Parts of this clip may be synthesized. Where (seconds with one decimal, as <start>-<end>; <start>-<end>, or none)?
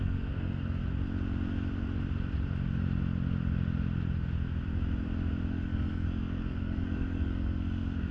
0.0-0.8; 5.5-8.1